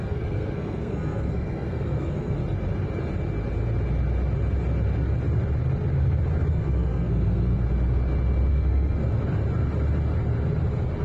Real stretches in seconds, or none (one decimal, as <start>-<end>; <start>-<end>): 2.4-6.5; 7.5-8.5; 9.0-11.0